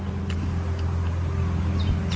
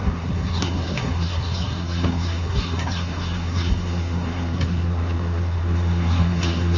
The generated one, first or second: second